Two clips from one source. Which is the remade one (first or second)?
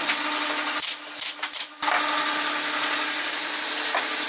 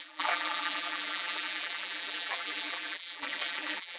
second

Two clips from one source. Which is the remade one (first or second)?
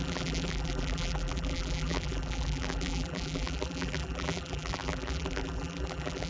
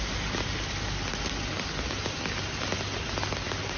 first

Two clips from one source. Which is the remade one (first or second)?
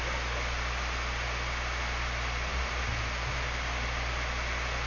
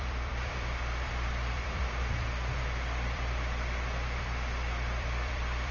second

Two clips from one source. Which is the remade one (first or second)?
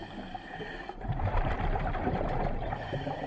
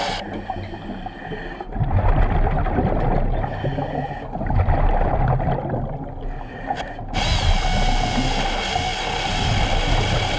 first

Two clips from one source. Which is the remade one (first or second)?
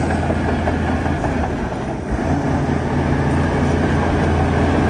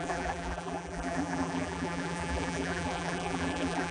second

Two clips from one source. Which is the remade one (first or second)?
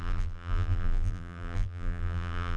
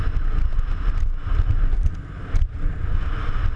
first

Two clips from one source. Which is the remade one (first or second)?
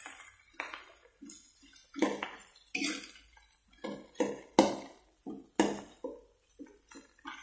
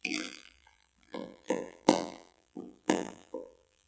second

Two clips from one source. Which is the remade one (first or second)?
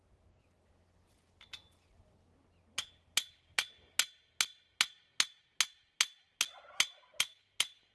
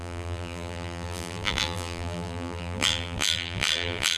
second